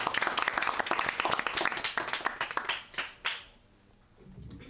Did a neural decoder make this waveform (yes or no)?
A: no